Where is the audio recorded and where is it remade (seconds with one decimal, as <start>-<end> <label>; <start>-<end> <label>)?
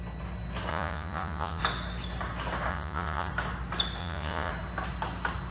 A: 0.0-0.7 recorded; 0.7-1.6 remade; 1.6-2.7 recorded; 2.7-3.3 remade; 3.3-4.0 recorded; 4.0-4.5 remade; 4.5-5.5 recorded